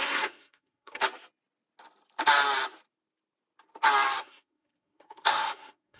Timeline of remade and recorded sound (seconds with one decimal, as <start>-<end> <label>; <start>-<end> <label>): 0.0-1.0 remade; 1.0-4.2 recorded; 4.2-6.0 remade